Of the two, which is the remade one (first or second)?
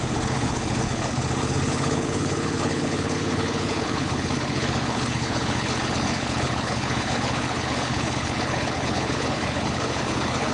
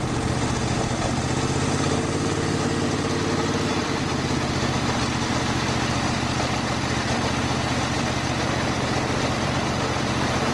first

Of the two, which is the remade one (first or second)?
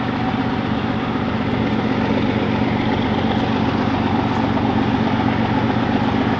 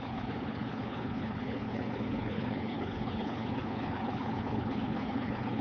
second